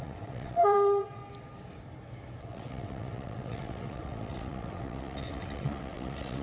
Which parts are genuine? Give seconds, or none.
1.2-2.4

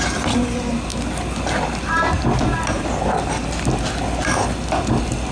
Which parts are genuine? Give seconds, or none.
0.0-5.3

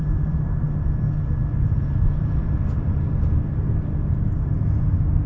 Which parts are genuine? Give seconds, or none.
0.6-1.4; 4.6-5.3